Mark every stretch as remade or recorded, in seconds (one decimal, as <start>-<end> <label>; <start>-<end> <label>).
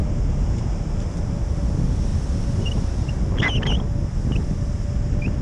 0.0-1.6 remade; 1.6-5.4 recorded